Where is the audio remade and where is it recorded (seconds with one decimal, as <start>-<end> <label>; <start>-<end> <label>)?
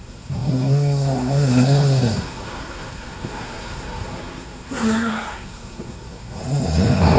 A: 0.0-6.4 remade; 6.4-7.2 recorded